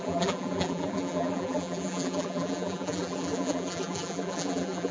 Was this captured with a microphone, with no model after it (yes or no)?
no